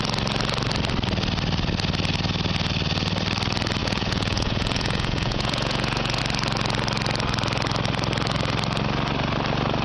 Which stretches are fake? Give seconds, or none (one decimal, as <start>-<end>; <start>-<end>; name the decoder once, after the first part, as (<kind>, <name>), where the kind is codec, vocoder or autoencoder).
3.8-6.2 (vocoder, Vocos)